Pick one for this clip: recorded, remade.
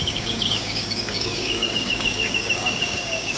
remade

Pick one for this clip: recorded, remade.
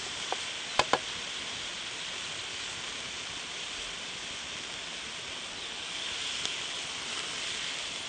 recorded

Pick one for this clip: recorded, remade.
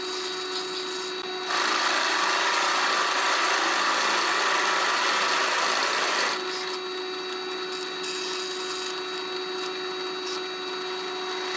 recorded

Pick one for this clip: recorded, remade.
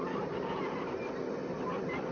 recorded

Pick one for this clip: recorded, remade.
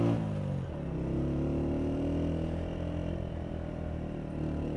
recorded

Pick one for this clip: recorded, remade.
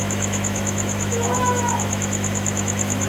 remade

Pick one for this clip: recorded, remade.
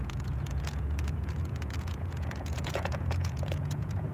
remade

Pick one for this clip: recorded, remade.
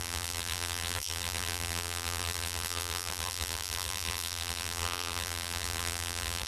remade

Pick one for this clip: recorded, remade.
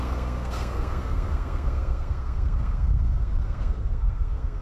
remade